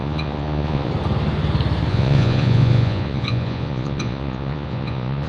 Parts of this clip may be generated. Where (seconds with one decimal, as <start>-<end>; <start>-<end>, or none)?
0.0-0.9; 1.9-5.3